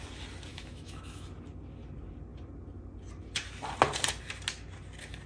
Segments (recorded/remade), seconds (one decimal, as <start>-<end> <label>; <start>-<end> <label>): 0.0-0.5 recorded; 0.5-1.3 remade; 1.3-5.3 recorded